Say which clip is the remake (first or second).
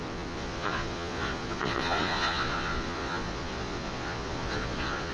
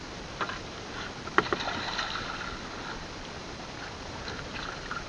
first